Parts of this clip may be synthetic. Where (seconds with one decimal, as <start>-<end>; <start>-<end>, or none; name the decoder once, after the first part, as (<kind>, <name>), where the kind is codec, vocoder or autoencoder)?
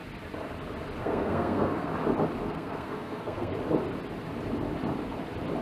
1.0-1.9 (codec, SNAC); 2.4-3.5